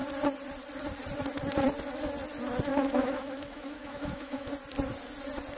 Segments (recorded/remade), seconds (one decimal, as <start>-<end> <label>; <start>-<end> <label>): 0.0-2.7 recorded; 2.7-4.5 remade; 4.5-5.6 recorded